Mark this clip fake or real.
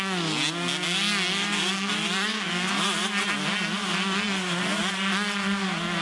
real